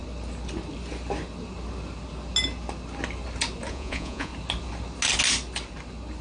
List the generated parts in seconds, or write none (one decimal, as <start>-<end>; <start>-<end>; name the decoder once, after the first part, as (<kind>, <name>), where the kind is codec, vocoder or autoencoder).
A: 3.7-4.3 (vocoder, Vocos)